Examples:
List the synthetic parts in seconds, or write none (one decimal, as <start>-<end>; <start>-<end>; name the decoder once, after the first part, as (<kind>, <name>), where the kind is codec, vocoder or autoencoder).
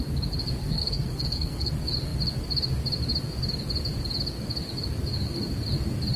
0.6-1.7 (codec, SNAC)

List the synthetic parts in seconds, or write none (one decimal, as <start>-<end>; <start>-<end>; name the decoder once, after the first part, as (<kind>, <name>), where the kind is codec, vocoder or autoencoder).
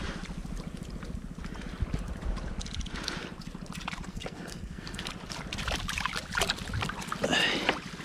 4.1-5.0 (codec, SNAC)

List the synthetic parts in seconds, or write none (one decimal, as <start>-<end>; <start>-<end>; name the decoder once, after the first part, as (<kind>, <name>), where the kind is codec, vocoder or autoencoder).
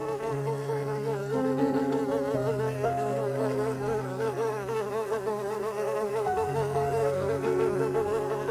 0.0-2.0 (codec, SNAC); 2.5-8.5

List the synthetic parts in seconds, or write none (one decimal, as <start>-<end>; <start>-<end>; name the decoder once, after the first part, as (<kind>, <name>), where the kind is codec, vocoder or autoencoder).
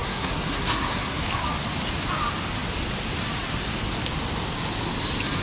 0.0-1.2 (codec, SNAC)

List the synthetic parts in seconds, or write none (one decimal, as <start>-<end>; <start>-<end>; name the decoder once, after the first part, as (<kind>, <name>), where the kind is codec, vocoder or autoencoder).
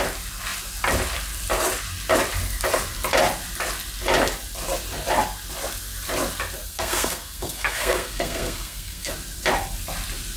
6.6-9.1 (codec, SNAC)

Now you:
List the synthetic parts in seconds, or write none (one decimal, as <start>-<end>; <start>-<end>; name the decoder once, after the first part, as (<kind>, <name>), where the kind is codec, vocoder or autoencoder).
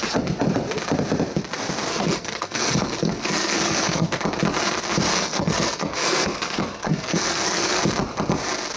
1.9-4.2 (codec, SNAC); 5.1-7.8